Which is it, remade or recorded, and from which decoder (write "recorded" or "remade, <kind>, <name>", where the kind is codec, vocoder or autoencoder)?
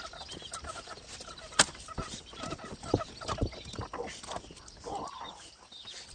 recorded